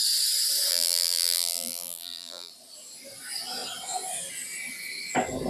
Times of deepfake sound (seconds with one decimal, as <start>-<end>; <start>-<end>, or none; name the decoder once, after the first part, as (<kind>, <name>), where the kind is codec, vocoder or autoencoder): 0.7-2.5 (vocoder, BigVGAN v2)